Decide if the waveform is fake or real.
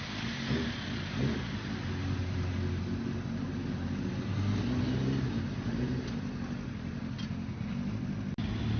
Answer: real